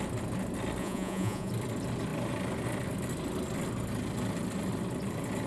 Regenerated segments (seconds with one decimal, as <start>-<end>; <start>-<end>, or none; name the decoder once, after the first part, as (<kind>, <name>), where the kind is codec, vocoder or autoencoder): 0.8-1.5 (vocoder, Vocos)